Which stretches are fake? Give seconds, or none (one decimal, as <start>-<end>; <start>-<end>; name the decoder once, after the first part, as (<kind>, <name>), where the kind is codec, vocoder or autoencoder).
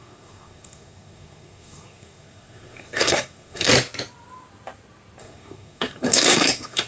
0.0-3.7 (codec, SNAC); 5.2-6.9